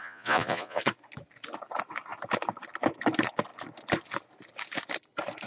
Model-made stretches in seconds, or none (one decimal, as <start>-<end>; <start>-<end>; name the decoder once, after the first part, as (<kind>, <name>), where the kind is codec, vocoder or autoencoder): 0.0-0.8 (vocoder, Vocos)